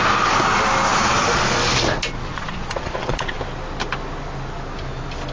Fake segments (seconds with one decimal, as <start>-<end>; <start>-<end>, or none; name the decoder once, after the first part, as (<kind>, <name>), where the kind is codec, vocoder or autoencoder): 0.9-1.6 (vocoder, Vocos); 2.3-3.4